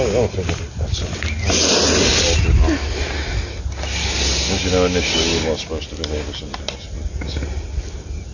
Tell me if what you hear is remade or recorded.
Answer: recorded